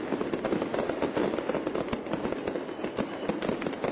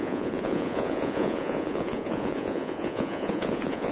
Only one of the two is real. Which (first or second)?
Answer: first